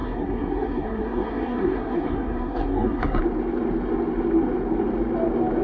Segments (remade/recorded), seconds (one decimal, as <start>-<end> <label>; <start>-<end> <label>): 0.0-3.2 remade; 3.2-5.6 recorded